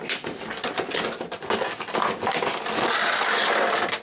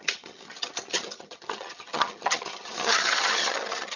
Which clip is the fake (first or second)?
second